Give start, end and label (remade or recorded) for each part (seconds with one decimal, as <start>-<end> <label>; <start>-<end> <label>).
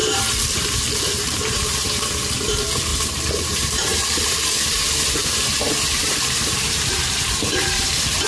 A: 0.0-2.1 remade; 2.1-2.9 recorded; 2.9-7.9 remade; 7.9-8.3 recorded